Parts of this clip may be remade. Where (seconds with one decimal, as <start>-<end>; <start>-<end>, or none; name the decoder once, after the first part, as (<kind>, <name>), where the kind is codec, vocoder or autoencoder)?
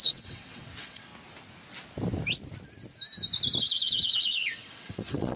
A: 0.0-1.1 (vocoder, WaveNeXt); 3.6-5.4